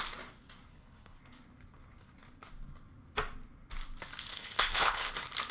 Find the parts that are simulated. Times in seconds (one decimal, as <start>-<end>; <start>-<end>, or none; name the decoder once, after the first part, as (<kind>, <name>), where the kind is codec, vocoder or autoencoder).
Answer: 0.7-1.2 (codec, HILCodec); 4.3-5.1